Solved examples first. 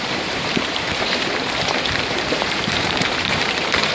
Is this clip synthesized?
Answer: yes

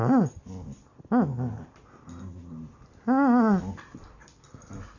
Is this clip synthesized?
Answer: no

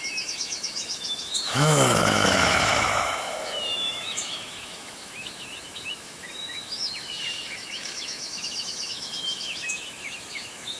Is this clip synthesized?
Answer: yes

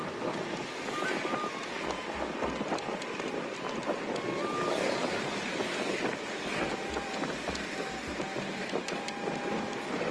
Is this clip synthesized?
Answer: no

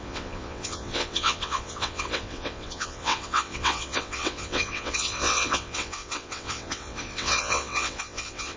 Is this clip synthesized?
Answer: yes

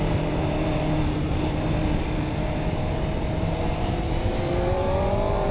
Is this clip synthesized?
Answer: yes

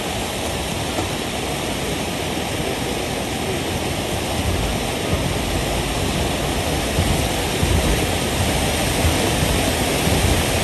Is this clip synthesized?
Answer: no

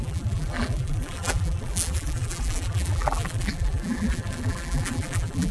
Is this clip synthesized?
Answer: yes